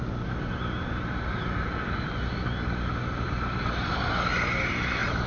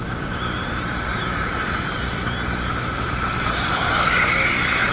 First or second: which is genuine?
first